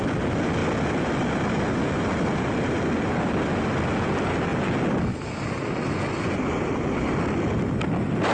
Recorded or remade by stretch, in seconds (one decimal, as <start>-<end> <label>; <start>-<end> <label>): 0.0-8.3 recorded

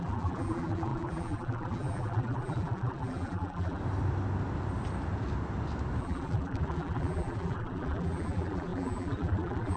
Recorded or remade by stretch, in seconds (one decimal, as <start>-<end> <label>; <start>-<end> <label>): 0.0-3.8 remade; 3.8-6.0 recorded; 6.0-9.8 remade

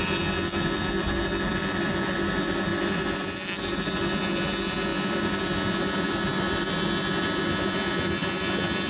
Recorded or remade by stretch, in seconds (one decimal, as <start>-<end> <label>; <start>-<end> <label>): 0.0-8.9 recorded

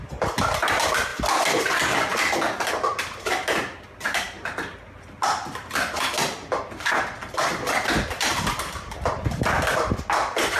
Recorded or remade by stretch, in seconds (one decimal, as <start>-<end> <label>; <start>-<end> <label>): 0.0-10.6 recorded